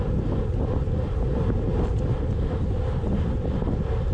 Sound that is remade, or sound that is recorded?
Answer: recorded